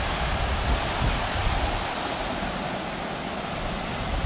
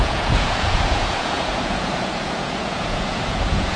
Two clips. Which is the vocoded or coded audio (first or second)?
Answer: second